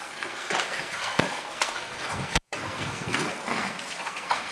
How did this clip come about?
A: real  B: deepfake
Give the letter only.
B